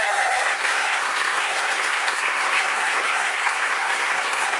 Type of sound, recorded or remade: remade